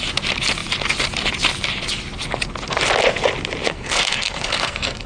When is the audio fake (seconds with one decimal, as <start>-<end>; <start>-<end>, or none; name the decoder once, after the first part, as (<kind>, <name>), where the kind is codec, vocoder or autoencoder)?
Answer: 3.7-5.1 (codec, SNAC)